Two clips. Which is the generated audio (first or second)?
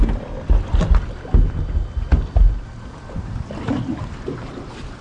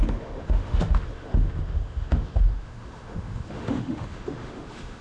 second